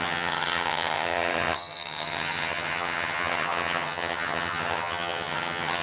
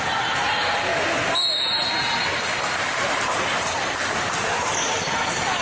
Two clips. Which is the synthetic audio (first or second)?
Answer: first